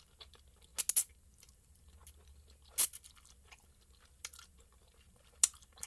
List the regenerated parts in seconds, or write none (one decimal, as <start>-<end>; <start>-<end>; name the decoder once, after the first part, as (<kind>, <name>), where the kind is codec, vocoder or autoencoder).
none

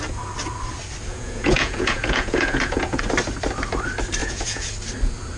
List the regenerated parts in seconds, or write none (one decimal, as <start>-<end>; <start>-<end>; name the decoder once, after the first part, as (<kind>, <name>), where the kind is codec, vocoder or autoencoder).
1.1-3.0 (vocoder, Vocos); 4.2-4.7

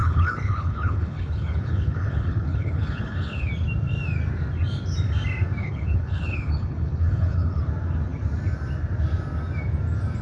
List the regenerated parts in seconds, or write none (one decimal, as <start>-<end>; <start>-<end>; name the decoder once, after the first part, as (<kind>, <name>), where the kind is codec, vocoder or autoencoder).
0.0-3.5 (codec, HILCodec); 5.6-7.6

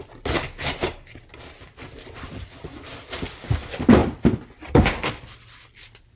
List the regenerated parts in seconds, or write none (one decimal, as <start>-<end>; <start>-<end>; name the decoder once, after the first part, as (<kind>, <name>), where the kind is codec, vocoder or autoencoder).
4.0-5.4 (vocoder, BigVGAN v2)

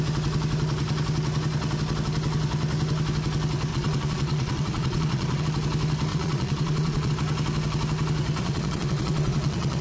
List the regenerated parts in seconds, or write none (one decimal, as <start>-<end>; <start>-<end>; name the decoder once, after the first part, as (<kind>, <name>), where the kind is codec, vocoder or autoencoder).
3.7-5.4 (vocoder, Vocos); 6.1-7.1; 8.4-9.8

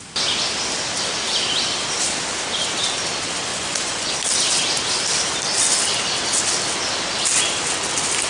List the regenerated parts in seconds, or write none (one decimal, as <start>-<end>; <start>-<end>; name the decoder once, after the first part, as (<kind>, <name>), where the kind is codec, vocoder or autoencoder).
3.5-4.1 (vocoder, Vocos)

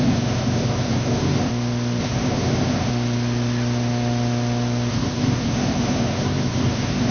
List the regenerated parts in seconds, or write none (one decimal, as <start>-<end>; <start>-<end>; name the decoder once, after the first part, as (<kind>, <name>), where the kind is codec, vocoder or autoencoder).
0.0-1.5 (codec, SNAC); 2.0-2.9; 4.9-7.1